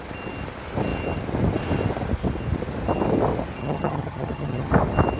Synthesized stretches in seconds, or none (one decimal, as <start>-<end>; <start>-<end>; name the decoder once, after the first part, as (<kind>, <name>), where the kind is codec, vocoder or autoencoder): 3.6-4.7 (vocoder, HiFi-GAN)